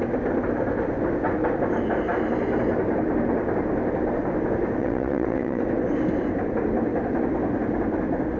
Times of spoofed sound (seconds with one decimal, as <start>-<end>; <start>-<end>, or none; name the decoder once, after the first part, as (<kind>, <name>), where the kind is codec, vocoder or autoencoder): 4.8-5.6 (vocoder, WaveNeXt)